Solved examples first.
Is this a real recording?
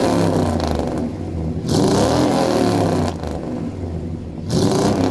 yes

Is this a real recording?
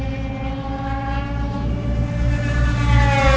yes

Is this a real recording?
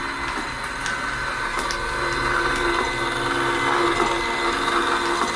yes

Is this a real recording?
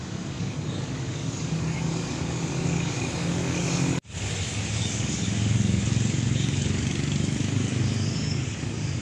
no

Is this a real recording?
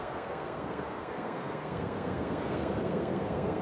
no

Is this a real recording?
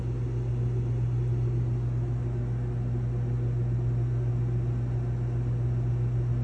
yes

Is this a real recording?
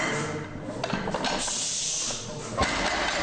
yes